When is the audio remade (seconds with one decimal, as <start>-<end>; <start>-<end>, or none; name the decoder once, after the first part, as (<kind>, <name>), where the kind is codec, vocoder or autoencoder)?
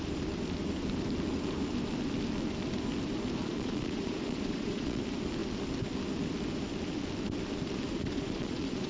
3.4-5.0 (vocoder, Vocos); 7.9-8.9